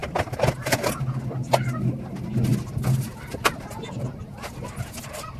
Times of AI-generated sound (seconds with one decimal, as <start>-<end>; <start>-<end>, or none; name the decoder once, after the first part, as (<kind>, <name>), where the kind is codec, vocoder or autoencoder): none